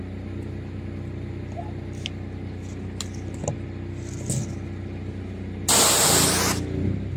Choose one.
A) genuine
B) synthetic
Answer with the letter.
A